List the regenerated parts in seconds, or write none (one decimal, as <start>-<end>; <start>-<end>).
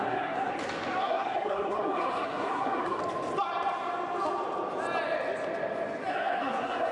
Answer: 0.0-0.5; 1.0-3.0; 6.1-6.9